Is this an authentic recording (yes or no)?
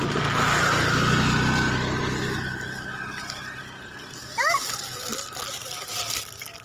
yes